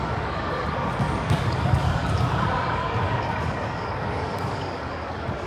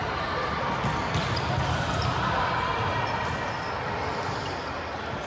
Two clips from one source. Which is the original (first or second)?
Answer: second